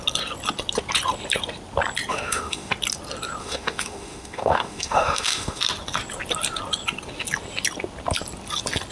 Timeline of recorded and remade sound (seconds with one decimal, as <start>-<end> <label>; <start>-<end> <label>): 0.0-2.1 recorded; 2.1-2.7 remade; 2.7-3.4 recorded; 3.4-5.6 remade; 5.6-8.9 recorded

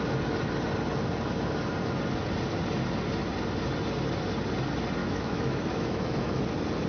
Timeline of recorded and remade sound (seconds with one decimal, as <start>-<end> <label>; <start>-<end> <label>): 0.0-5.0 recorded; 5.0-6.4 remade; 6.4-6.9 recorded

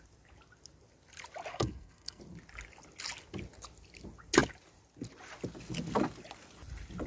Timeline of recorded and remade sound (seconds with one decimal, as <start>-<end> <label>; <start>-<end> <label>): 0.0-1.5 recorded; 1.5-2.2 remade; 2.2-7.1 recorded

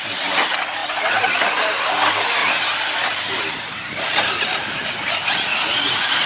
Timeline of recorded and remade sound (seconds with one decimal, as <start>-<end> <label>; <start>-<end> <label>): 0.0-6.3 recorded

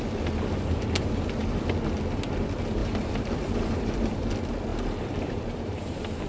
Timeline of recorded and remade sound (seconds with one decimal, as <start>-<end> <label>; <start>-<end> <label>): 0.0-2.8 recorded; 2.8-4.3 remade; 4.3-4.7 recorded; 4.7-6.3 remade

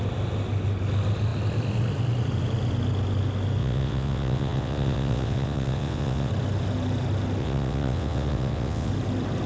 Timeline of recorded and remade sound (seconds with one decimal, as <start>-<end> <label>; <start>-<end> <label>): 0.0-3.6 recorded; 3.6-6.3 remade; 6.3-7.4 recorded; 7.4-8.9 remade; 8.9-9.5 recorded

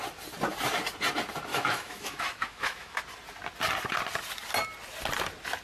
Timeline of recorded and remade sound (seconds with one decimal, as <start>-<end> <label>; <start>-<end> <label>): 0.0-1.5 recorded; 1.5-3.0 remade; 3.0-5.6 recorded

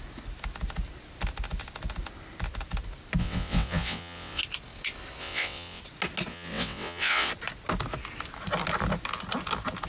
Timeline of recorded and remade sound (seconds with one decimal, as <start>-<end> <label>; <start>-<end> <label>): 0.0-3.2 recorded; 3.2-4.4 remade; 4.4-5.2 recorded; 5.2-5.8 remade; 5.8-6.3 recorded; 6.3-7.3 remade; 7.3-9.9 recorded